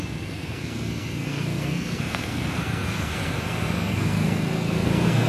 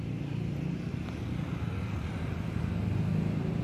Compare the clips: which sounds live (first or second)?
second